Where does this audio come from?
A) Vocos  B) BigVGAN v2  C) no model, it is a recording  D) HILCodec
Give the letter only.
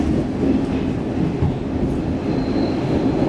C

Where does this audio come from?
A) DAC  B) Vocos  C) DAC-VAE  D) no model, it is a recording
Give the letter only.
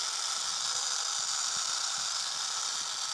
D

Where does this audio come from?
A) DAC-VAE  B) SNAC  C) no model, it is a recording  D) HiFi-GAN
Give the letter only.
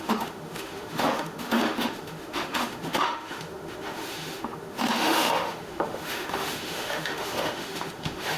A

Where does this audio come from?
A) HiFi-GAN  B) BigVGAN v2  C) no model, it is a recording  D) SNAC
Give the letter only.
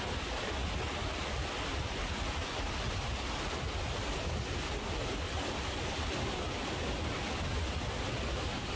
C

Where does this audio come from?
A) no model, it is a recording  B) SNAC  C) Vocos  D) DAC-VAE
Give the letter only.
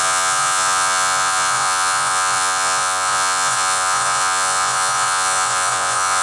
C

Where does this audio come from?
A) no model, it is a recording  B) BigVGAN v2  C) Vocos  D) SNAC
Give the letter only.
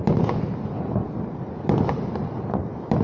A